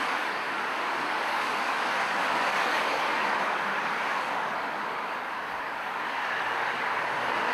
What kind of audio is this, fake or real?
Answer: fake